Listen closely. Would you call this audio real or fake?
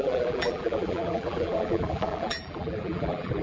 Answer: fake